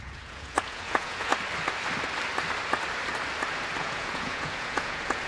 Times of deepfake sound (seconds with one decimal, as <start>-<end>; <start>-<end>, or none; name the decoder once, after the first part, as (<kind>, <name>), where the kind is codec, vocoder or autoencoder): 0.0-1.3 (vocoder, Vocos); 3.8-5.3